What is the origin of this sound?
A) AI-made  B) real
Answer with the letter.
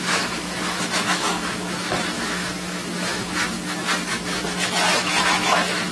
A